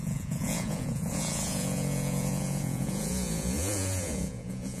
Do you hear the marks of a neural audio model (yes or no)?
yes